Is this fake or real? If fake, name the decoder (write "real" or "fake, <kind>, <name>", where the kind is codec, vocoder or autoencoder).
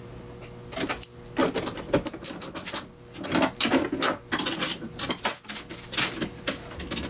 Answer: real